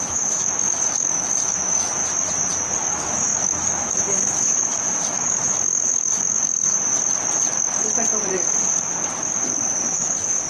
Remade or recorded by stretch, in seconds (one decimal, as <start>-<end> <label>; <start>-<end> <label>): 0.0-2.0 remade; 2.0-2.9 recorded; 2.9-6.7 remade; 6.7-9.7 recorded; 9.7-10.5 remade